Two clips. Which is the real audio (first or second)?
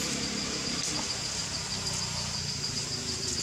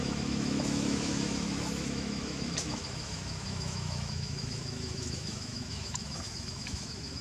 first